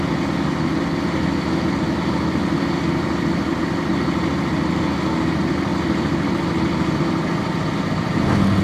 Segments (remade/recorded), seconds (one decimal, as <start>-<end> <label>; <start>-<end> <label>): 0.0-8.6 recorded